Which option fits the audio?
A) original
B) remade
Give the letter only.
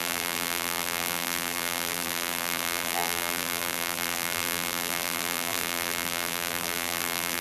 B